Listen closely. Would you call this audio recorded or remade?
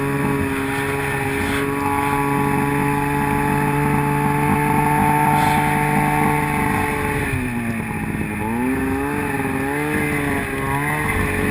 recorded